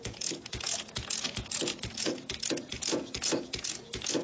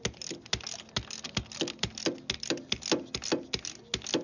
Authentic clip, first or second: second